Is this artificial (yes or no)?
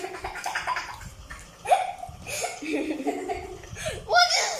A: no